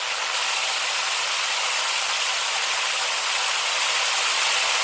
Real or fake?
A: real